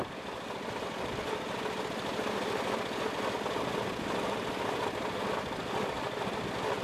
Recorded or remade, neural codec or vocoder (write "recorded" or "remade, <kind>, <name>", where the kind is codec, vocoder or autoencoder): recorded